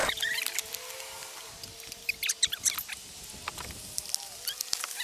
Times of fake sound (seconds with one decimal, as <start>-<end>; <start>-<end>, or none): 0.0-0.5